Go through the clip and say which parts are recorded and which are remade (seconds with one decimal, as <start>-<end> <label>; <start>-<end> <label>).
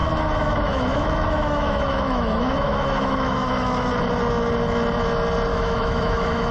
0.0-3.9 remade; 3.9-5.5 recorded; 5.5-6.5 remade